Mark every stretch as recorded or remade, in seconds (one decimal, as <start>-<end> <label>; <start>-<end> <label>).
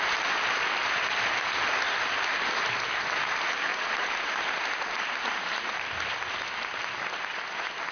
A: 0.0-3.7 recorded; 3.7-4.4 remade; 4.4-7.9 recorded